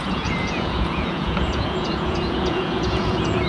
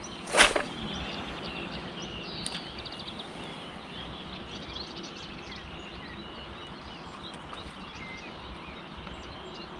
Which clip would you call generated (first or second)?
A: first